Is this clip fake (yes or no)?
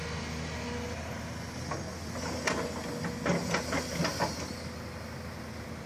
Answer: no